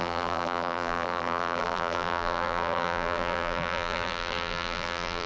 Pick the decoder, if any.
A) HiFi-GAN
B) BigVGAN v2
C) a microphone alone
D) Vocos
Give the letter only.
B